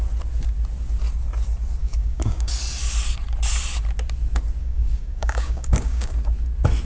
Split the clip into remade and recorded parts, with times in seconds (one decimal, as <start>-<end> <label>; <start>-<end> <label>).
0.0-1.8 recorded; 1.8-2.5 remade; 2.5-4.6 recorded; 4.6-6.1 remade; 6.1-6.8 recorded